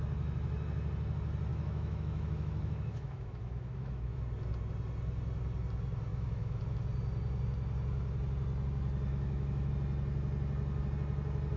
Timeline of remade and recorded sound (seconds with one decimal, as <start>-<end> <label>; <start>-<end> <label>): 0.0-1.5 recorded; 1.5-4.2 remade; 4.2-6.1 recorded; 6.1-6.6 remade; 6.6-9.1 recorded; 9.1-9.7 remade; 9.7-11.6 recorded